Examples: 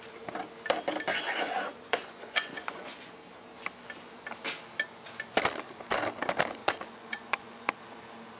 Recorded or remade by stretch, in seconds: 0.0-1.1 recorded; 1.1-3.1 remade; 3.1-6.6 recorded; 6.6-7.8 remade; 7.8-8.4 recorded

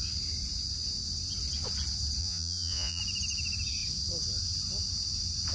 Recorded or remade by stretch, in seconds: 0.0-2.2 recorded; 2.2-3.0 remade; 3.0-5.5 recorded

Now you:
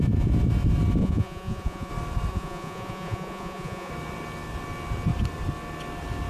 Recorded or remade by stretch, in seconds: 0.0-1.0 recorded; 1.0-1.9 remade; 1.9-2.3 recorded; 2.3-3.9 remade; 3.9-6.3 recorded